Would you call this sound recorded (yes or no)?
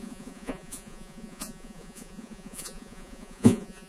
no